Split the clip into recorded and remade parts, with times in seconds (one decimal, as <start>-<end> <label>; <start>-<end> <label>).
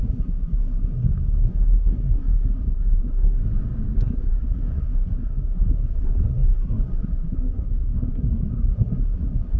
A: 0.0-3.4 remade; 3.4-4.0 recorded; 4.0-9.6 remade